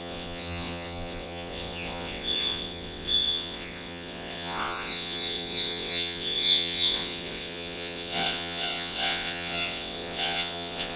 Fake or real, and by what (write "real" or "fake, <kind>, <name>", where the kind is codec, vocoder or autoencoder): fake, vocoder, WaveNeXt